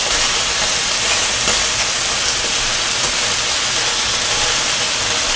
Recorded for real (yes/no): yes